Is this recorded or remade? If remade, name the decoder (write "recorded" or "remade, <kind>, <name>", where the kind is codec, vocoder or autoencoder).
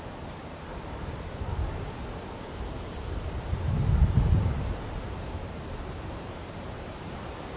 remade, vocoder, BigVGAN v2